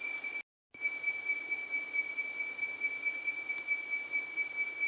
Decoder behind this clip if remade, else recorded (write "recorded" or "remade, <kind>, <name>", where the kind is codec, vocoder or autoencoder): recorded